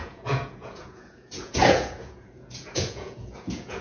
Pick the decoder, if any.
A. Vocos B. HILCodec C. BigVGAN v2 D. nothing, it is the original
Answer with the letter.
A